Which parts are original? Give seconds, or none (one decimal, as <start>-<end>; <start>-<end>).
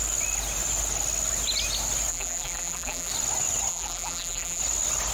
0.0-2.1; 3.1-3.7; 4.6-5.1